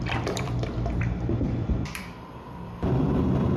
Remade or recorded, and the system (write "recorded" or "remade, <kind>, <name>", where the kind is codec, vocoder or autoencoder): remade, vocoder, BigVGAN v2